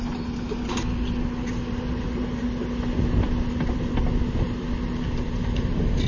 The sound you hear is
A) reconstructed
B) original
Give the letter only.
B